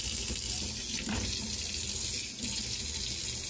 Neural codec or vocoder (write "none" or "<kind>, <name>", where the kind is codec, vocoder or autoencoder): none